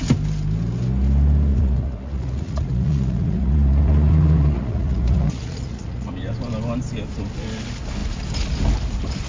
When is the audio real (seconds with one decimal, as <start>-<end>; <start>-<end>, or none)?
0.0-1.5; 6.1-9.3